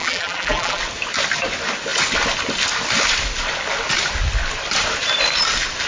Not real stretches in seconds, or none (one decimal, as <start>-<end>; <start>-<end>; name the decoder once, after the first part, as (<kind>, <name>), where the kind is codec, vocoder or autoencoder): 0.0-0.8 (vocoder, BigVGAN v2)